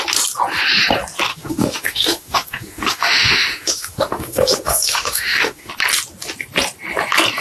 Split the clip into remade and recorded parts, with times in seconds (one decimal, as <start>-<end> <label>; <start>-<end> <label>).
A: 0.0-1.3 recorded; 1.3-5.7 remade; 5.7-7.4 recorded